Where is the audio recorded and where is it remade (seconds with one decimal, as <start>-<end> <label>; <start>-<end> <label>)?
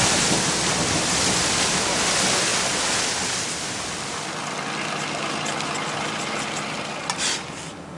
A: 0.0-8.0 recorded